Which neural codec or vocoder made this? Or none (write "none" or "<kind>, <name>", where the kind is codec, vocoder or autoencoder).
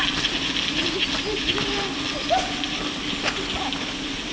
none